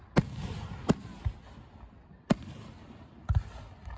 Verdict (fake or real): real